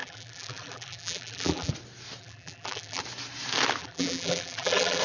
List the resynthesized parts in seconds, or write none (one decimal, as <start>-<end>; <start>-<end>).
0.0-1.7; 2.2-3.0; 3.8-5.0